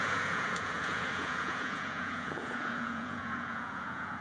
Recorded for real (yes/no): no